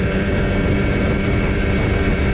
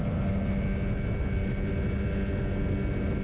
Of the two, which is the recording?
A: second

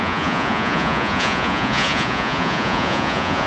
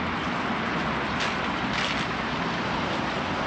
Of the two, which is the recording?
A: second